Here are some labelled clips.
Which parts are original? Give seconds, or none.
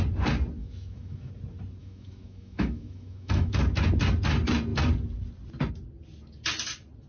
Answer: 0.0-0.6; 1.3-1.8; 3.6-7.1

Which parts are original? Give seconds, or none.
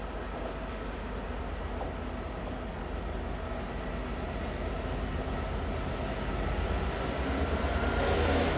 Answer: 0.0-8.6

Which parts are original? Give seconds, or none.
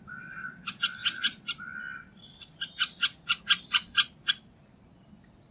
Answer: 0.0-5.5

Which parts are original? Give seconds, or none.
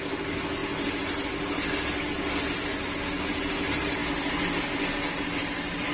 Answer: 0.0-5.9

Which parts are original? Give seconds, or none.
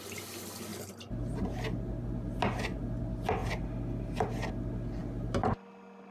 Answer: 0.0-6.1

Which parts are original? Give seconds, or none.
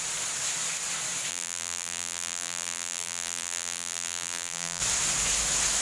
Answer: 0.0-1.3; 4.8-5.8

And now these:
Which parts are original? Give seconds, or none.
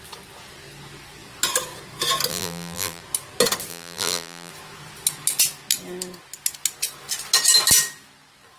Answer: 0.0-2.3; 3.0-3.7; 4.5-8.6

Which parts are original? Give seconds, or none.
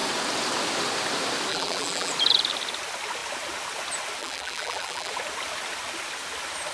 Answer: 0.0-1.5; 2.1-4.2; 5.1-6.7